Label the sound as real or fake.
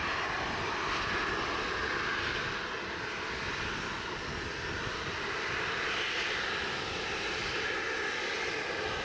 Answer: real